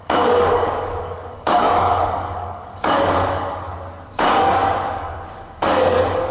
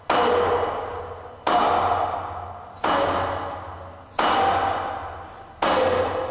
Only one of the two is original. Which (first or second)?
second